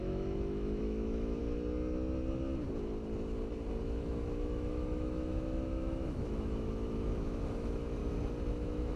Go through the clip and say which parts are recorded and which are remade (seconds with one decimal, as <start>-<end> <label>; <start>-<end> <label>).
0.0-1.4 remade; 1.4-3.8 recorded; 3.8-8.0 remade; 8.0-8.5 recorded; 8.5-9.0 remade